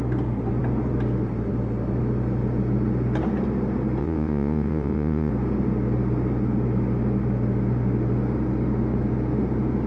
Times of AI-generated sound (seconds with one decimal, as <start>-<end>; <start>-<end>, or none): 4.0-5.3